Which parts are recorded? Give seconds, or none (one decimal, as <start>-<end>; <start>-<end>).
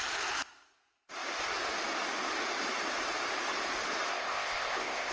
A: 0.0-4.1